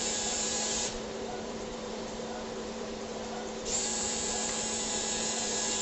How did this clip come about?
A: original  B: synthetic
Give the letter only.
B